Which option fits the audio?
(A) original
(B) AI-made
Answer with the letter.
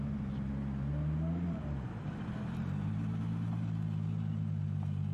A